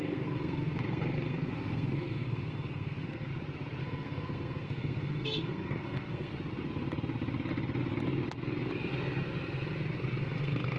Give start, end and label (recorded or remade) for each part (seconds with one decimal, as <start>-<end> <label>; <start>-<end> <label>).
0.0-3.3 remade; 3.3-3.8 recorded; 3.8-6.3 remade; 6.3-10.2 recorded; 10.2-10.8 remade